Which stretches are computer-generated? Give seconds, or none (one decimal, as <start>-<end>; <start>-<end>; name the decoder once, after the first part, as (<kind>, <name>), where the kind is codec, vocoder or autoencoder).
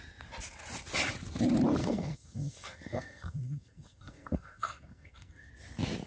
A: 1.8-5.5 (codec, SNAC)